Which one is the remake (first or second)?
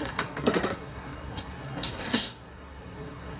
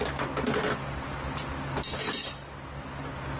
first